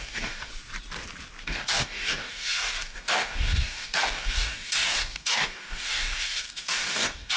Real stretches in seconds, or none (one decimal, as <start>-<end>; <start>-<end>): 0.5-1.4